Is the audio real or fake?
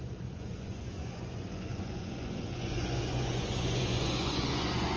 fake